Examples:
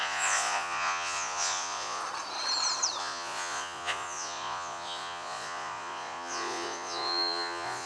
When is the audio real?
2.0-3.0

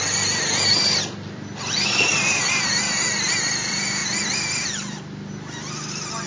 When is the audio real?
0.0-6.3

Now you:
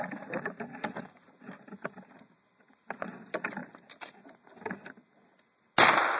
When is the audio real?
0.0-6.2

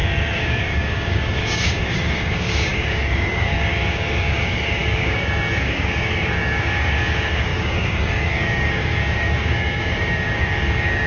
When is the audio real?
none